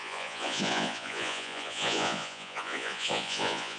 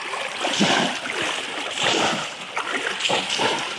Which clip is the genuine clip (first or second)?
second